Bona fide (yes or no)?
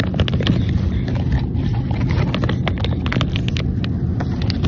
yes